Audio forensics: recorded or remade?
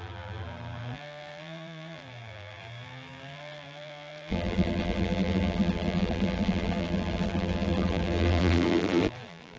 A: remade